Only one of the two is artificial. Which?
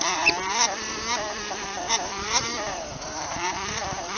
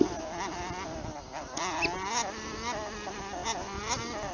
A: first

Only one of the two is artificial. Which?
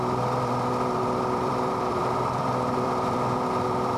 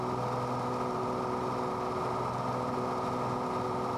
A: first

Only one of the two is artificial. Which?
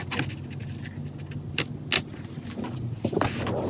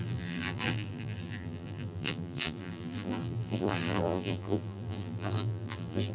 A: second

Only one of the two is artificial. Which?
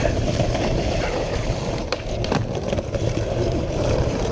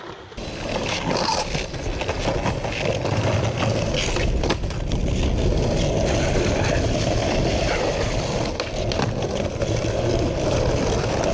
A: first